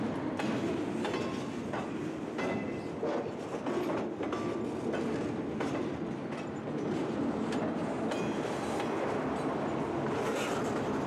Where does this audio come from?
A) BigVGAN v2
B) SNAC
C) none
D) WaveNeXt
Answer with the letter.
C